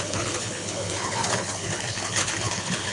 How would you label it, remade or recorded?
remade